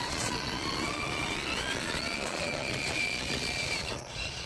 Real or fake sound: fake